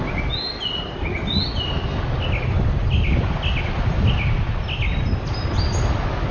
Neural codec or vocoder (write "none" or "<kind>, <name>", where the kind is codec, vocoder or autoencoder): none